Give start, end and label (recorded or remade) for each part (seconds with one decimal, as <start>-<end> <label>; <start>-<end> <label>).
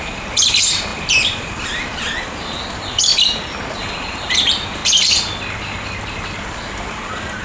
0.0-3.1 remade; 3.1-3.7 recorded; 3.7-4.8 remade; 4.8-6.2 recorded; 6.2-7.4 remade